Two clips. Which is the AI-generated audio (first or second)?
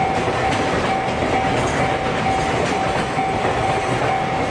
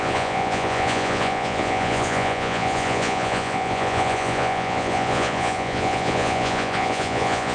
second